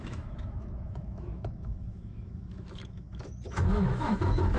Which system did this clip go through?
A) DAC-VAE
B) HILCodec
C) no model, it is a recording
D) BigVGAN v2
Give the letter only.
A